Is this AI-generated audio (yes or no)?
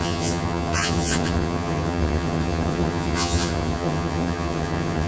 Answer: yes